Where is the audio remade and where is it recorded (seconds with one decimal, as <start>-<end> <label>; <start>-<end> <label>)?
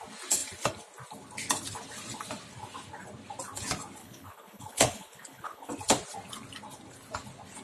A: 0.0-4.0 recorded; 4.0-5.7 remade; 5.7-7.6 recorded